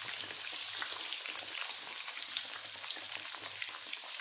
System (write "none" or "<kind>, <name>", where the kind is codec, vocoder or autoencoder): none